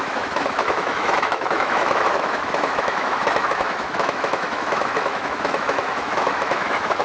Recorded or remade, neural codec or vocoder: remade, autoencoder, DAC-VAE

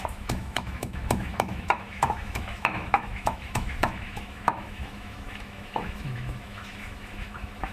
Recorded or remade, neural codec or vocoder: remade, autoencoder, DAC-VAE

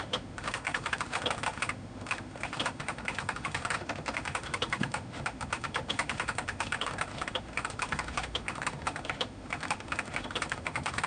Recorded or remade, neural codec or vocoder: remade, autoencoder, DAC-VAE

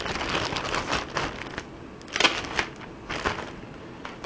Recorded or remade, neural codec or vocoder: recorded